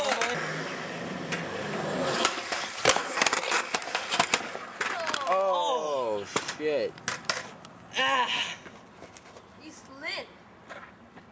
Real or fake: real